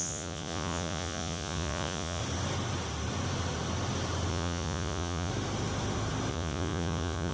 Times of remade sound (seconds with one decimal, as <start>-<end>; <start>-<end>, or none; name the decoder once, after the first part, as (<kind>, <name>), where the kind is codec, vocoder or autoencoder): 0.0-2.2 (vocoder, Vocos); 4.3-5.3; 6.3-7.3